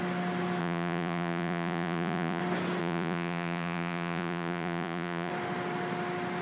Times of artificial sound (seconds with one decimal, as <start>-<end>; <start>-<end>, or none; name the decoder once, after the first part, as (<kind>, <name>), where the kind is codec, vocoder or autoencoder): 0.6-2.4 (vocoder, Vocos); 2.8-5.3